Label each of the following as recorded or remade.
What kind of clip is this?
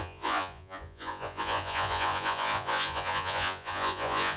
remade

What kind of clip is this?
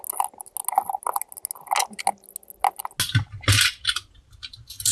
recorded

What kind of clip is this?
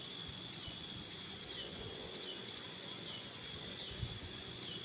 remade